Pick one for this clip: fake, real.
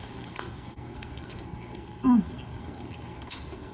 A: fake